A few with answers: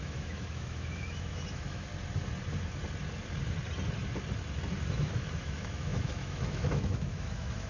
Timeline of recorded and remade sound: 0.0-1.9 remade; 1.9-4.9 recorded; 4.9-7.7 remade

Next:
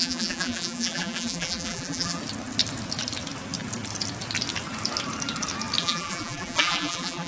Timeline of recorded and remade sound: 0.0-2.2 remade; 2.2-5.8 recorded; 5.8-7.3 remade

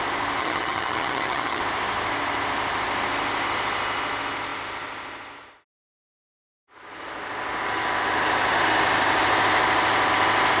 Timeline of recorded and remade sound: 0.0-0.4 recorded; 0.4-1.6 remade; 1.6-10.6 recorded

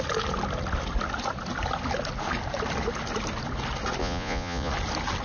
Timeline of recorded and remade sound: 0.0-4.0 recorded; 4.0-4.7 remade; 4.7-5.2 recorded

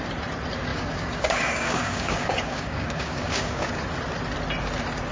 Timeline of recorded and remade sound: 0.0-0.7 recorded; 0.7-3.8 remade; 3.8-5.1 recorded

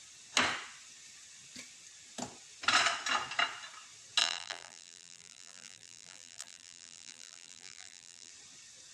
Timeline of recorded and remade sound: 0.0-4.2 recorded; 4.2-8.3 remade; 8.3-8.9 recorded

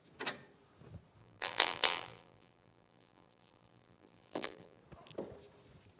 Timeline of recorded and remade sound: 0.0-1.2 recorded; 1.2-4.8 remade; 4.8-6.0 recorded